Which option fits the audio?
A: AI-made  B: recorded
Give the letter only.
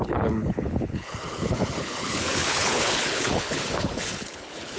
A